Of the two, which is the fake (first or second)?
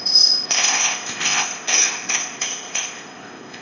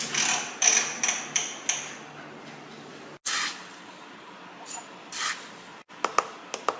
first